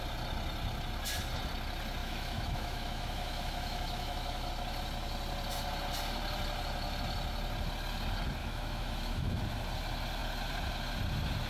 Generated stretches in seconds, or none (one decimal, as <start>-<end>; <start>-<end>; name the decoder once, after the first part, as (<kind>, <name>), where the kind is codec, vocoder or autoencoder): 2.0-4.5 (autoencoder, DAC-VAE); 8.4-9.4